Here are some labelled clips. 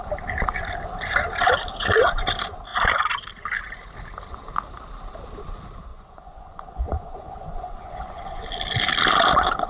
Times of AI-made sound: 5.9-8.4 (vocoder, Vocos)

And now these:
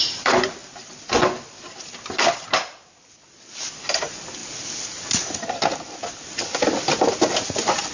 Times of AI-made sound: none